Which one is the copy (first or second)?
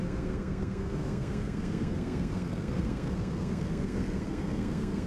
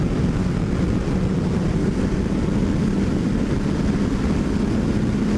first